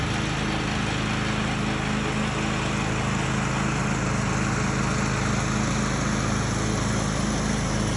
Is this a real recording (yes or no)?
yes